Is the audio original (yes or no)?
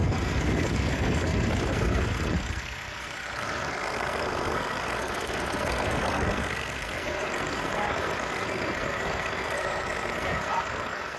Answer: no